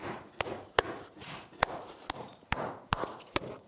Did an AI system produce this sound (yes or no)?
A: yes